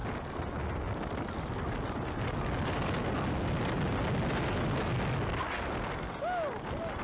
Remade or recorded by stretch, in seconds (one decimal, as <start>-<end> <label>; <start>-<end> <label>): 0.0-7.0 recorded